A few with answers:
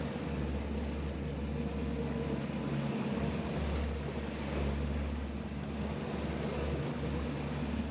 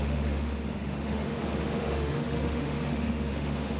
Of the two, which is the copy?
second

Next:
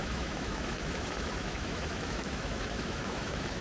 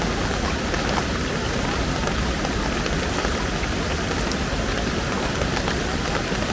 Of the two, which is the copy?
first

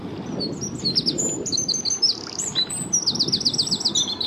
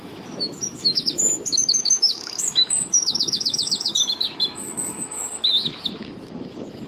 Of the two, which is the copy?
second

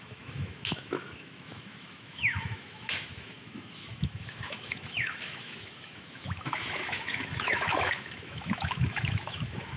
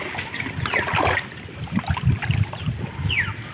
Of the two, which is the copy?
first